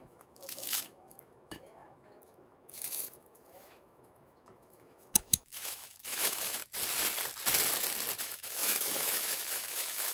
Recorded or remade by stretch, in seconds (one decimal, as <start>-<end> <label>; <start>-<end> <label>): 0.0-6.6 remade; 6.6-8.2 recorded; 8.2-10.1 remade